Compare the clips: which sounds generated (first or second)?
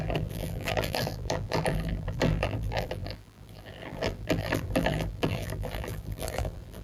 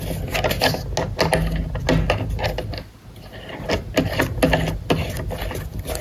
first